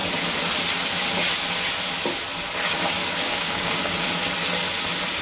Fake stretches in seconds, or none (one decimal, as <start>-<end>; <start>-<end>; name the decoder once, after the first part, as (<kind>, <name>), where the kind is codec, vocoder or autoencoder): 3.0-4.1 (codec, DAC)